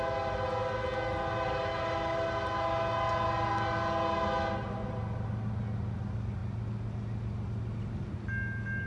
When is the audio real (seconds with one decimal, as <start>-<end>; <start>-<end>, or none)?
0.0-8.9